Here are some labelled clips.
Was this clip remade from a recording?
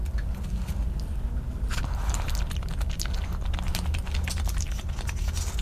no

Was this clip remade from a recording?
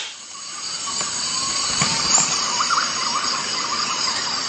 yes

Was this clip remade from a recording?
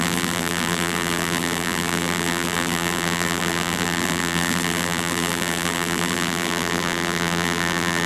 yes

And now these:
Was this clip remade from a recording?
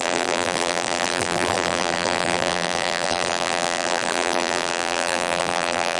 yes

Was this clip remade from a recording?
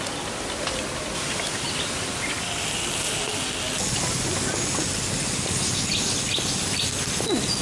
no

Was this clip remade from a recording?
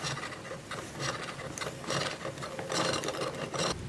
no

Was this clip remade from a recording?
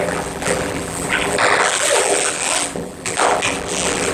yes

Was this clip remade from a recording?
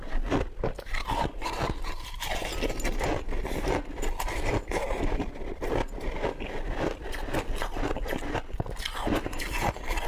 no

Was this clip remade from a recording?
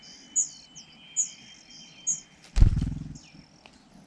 no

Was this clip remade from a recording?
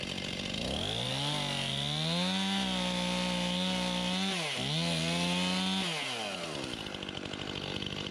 no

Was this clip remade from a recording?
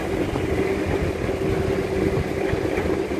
no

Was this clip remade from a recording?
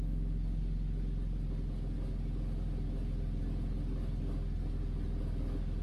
no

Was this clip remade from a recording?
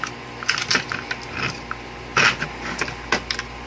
no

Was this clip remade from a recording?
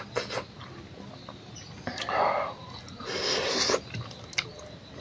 no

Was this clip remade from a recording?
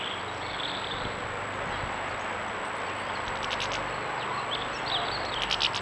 yes